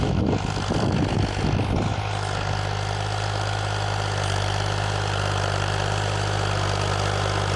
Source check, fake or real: real